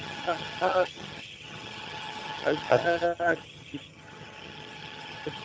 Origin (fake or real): fake